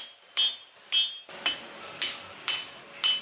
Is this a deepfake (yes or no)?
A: no